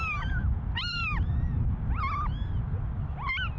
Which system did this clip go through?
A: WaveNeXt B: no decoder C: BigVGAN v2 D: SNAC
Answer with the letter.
B